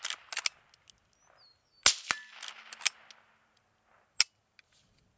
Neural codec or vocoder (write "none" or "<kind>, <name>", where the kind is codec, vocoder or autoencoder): none